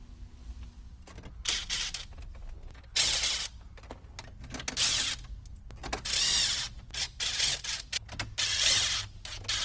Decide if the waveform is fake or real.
real